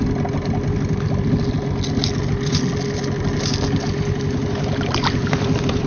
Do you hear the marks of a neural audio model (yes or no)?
no